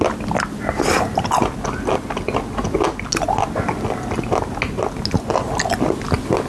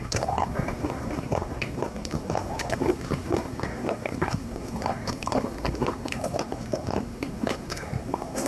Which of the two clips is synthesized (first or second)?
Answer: second